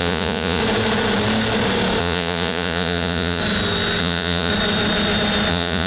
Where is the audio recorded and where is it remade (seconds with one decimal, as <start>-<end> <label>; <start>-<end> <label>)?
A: 0.0-0.6 remade; 0.6-2.0 recorded; 2.0-3.4 remade; 3.4-4.0 recorded; 4.0-4.5 remade; 4.5-5.5 recorded; 5.5-5.9 remade